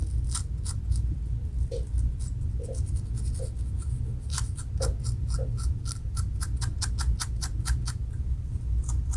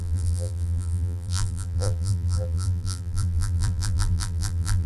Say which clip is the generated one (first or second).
second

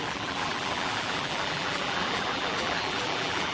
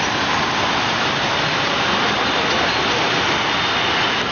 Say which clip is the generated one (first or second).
first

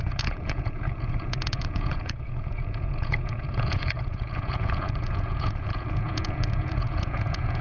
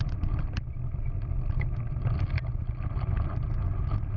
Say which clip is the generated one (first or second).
first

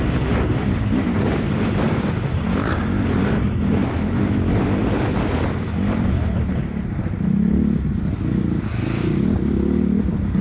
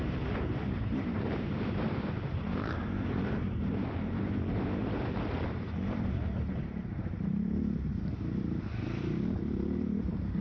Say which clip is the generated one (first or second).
second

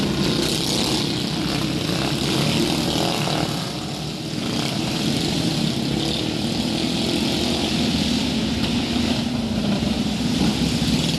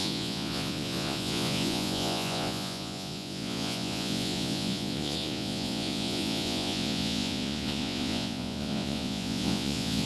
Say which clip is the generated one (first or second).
second